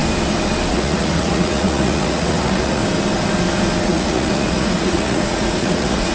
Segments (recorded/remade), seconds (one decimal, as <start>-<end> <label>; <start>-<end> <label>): 0.0-0.7 recorded; 0.7-2.8 remade; 2.8-3.8 recorded; 3.8-6.1 remade